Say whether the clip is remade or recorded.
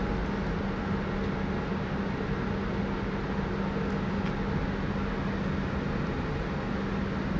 recorded